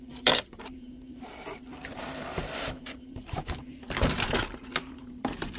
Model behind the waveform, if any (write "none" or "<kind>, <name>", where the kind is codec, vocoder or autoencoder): vocoder, BigVGAN v2